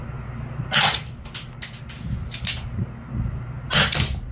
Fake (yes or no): no